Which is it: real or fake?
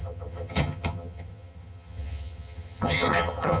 fake